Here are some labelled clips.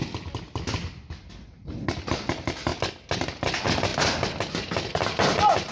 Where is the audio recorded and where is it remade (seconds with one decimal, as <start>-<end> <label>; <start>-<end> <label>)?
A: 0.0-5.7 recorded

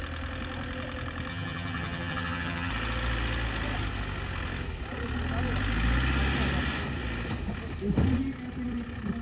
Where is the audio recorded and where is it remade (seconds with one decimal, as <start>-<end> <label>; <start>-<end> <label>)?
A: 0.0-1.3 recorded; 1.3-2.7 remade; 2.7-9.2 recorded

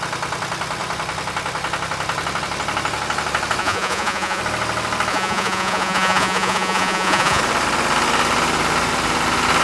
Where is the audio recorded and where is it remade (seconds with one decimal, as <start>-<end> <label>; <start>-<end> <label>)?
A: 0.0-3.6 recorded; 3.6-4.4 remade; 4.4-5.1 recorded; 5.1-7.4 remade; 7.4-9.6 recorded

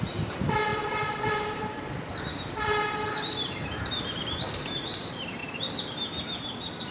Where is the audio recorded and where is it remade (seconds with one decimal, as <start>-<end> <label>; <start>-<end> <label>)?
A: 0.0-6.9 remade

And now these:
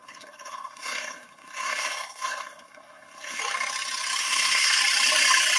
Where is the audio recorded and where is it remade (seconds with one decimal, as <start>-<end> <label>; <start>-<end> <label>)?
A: 0.0-3.4 remade; 3.4-4.2 recorded; 4.2-4.8 remade; 4.8-5.6 recorded

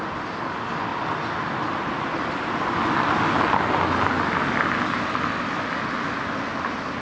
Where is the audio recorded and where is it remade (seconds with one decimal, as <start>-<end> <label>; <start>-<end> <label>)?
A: 0.0-7.0 recorded